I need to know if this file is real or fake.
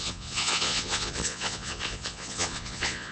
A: fake